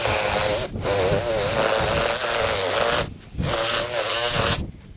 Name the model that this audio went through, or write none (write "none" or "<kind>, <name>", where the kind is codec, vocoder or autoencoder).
none